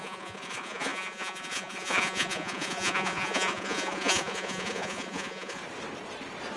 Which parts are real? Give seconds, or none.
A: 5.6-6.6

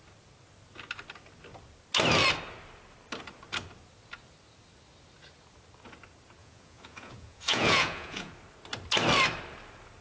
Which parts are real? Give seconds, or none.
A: 0.0-6.4; 8.3-10.0

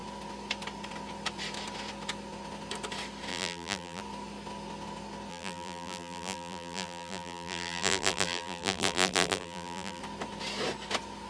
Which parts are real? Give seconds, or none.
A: 0.0-3.3; 4.0-5.3; 10.0-11.3

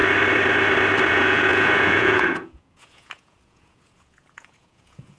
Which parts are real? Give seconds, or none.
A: 0.0-1.1